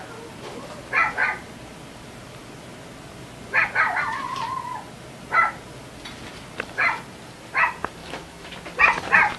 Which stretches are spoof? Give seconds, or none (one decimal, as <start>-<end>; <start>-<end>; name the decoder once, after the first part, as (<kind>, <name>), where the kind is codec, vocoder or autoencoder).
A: 8.0-8.5 (autoencoder, DAC-VAE)